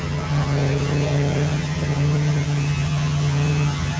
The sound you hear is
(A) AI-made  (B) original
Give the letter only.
A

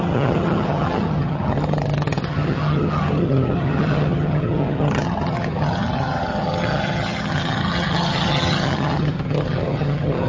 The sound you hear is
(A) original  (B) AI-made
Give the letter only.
B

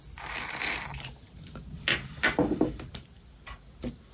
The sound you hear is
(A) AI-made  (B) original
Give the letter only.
B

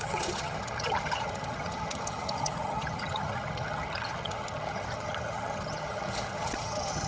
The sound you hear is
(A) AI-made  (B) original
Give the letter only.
A